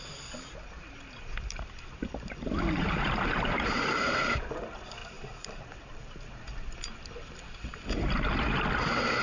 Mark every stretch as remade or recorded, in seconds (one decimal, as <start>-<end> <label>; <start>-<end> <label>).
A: 0.0-1.9 recorded; 1.9-4.3 remade; 4.3-5.0 recorded; 5.0-6.2 remade; 6.2-9.2 recorded